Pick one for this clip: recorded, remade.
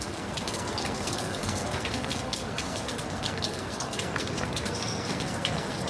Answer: remade